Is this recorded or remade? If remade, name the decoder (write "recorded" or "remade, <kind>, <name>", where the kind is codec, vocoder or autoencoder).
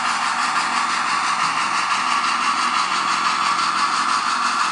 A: recorded